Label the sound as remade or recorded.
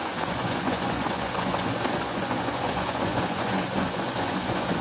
remade